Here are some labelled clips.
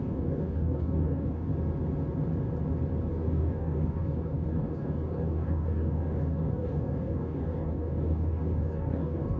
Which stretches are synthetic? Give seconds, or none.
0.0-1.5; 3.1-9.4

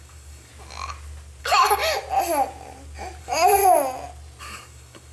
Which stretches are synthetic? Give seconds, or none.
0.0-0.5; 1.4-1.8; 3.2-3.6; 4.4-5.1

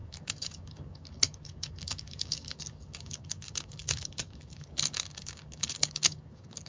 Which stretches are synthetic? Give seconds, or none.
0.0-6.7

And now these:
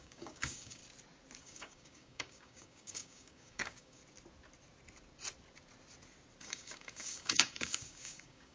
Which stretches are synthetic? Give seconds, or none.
0.0-0.8; 1.4-4.0; 6.4-8.5

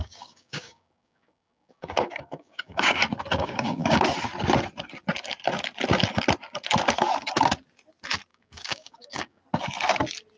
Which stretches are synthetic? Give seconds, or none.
0.0-3.0; 3.4-4.0; 8.3-9.4

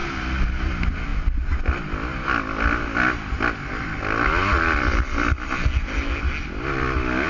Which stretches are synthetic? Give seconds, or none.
none